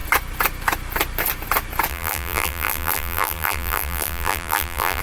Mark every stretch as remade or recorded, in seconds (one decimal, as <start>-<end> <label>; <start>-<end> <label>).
0.0-1.9 recorded; 1.9-5.0 remade